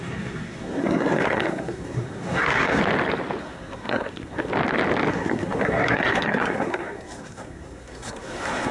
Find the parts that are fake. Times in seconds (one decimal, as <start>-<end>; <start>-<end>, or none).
0.0-2.8; 3.4-4.5; 5.1-8.7